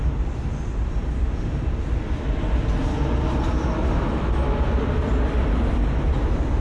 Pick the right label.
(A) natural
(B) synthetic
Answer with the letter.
A